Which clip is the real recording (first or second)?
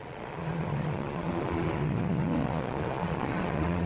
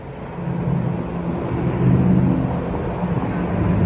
second